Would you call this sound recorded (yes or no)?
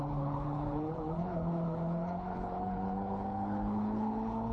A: no